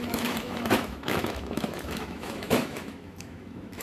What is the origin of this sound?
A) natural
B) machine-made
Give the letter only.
B